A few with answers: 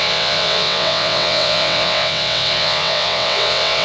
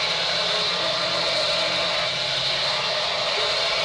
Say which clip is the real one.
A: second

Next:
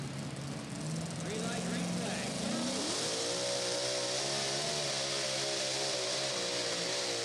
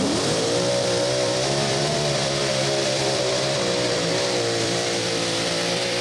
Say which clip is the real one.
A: first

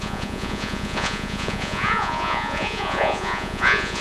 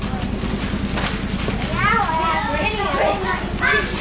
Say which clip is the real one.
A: second